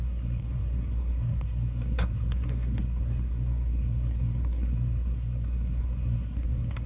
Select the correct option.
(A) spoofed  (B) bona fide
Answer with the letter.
A